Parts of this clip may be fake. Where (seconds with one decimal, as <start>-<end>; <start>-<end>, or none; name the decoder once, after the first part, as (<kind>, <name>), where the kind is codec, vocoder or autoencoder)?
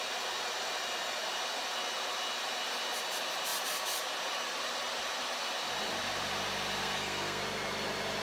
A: 6.8-7.4 (codec, SNAC)